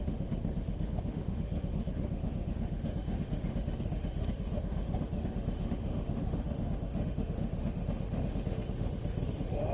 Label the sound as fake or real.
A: fake